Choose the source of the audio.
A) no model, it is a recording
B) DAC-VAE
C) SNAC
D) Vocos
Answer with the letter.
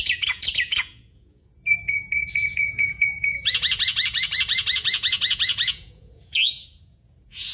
D